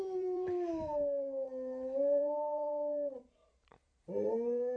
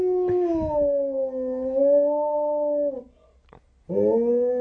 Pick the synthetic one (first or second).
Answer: first